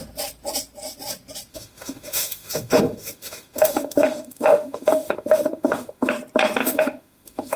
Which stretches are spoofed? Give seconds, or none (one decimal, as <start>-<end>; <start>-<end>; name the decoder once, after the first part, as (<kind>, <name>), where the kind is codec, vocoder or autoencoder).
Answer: 1.5-6.1 (autoencoder, DAC-VAE); 6.6-7.6